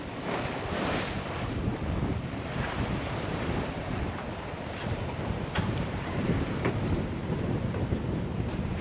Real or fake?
fake